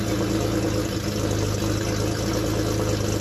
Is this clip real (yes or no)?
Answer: yes